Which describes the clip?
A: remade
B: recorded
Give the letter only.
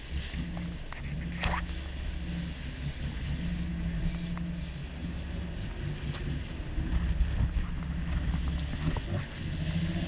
B